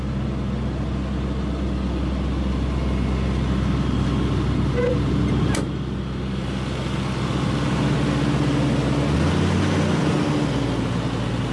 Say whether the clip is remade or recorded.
recorded